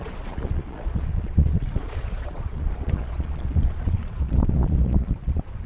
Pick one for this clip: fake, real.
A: fake